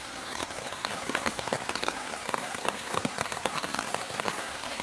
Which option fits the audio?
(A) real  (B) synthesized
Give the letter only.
B